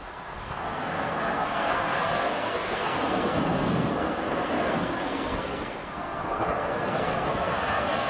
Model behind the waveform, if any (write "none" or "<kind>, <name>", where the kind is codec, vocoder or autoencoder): codec, SNAC